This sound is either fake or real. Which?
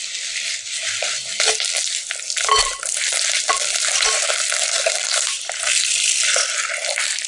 real